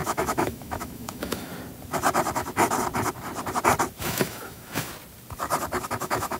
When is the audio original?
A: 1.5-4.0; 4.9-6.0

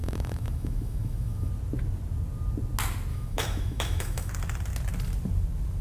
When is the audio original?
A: 1.5-3.1; 4.3-5.8

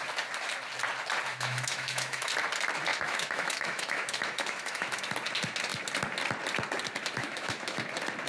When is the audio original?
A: 0.0-1.3; 2.3-2.9; 5.0-7.2; 7.8-8.3

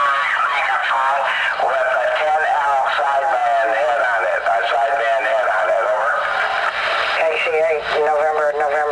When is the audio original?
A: 0.0-0.8; 1.4-8.9